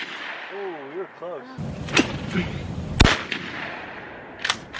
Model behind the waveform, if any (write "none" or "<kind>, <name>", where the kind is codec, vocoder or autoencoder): none